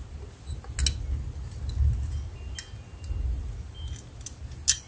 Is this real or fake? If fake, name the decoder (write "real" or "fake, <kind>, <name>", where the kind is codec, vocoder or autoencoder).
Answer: real